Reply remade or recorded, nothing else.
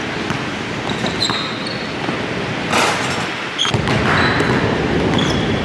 recorded